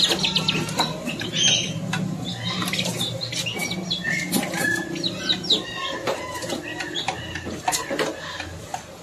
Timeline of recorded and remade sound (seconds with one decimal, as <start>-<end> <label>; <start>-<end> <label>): 0.0-9.0 recorded